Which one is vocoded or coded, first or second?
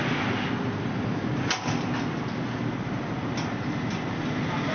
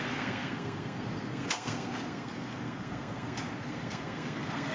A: second